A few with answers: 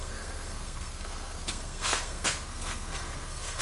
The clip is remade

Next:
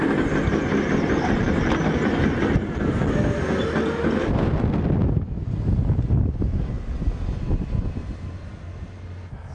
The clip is recorded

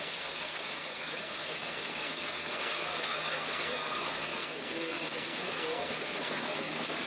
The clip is remade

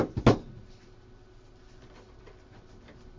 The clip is recorded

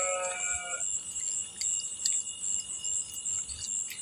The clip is recorded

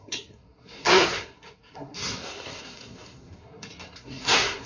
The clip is remade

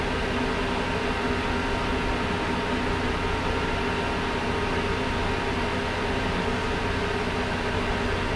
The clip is recorded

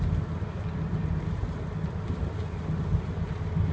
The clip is recorded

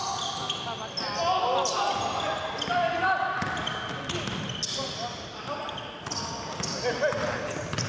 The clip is recorded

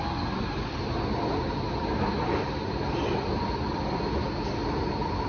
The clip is recorded